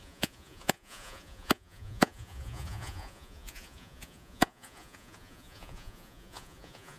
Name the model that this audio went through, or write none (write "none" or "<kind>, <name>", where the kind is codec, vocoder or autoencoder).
vocoder, Vocos